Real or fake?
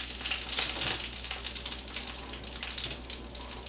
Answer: real